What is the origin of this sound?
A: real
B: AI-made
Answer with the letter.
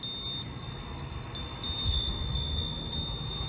A